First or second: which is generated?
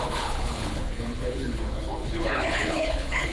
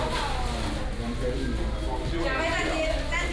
first